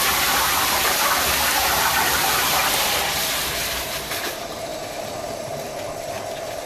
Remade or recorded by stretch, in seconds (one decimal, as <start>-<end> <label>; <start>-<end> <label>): 0.0-1.3 remade; 1.3-2.8 recorded; 2.8-5.7 remade; 5.7-6.3 recorded; 6.3-6.7 remade